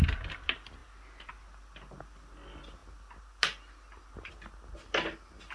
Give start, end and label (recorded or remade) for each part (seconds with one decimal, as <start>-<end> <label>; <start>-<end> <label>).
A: 0.0-5.5 recorded